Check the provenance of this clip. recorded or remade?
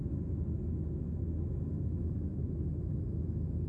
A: remade